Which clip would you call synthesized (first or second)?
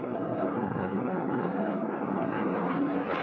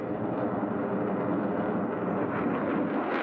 first